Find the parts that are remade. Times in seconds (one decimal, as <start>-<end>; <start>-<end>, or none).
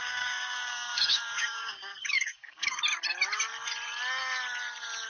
0.0-2.8